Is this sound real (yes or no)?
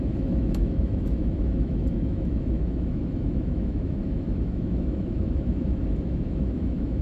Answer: no